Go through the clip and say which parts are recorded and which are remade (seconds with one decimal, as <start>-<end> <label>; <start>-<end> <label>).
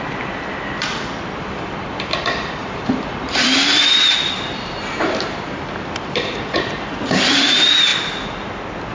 0.0-7.9 remade; 7.9-8.9 recorded